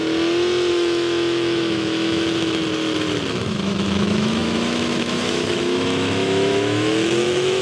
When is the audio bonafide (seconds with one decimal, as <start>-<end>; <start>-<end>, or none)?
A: 0.0-0.7; 2.6-3.3